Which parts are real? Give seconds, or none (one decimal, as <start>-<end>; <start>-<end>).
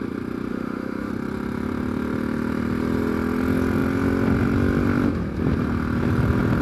0.0-0.5; 1.1-6.6